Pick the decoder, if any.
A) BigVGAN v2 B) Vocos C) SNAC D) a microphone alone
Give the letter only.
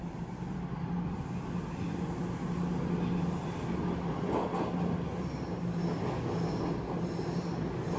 D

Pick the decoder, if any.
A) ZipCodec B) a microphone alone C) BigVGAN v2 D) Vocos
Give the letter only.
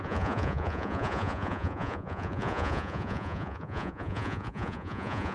D